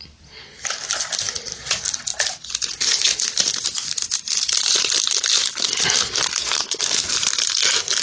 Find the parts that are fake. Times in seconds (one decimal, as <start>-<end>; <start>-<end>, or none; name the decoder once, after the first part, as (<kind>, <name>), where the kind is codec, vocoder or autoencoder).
6.4-7.1 (codec, SNAC)